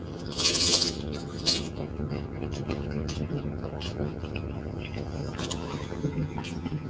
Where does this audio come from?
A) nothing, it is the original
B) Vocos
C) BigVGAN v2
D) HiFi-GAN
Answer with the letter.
D